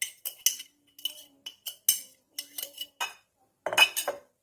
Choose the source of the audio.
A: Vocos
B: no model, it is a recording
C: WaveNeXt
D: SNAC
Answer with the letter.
B